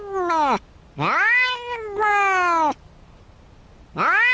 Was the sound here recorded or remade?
recorded